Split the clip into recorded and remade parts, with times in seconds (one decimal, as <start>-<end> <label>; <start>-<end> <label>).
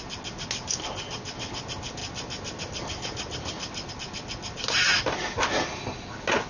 0.0-2.0 recorded; 2.0-3.9 remade; 3.9-6.5 recorded